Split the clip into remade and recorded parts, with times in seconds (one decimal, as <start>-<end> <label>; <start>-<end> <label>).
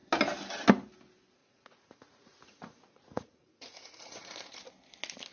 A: 0.0-1.4 recorded; 1.4-4.6 remade; 4.6-5.3 recorded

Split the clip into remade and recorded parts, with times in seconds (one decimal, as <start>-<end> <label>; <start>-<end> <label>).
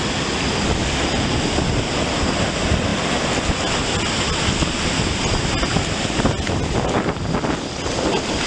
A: 0.0-8.5 recorded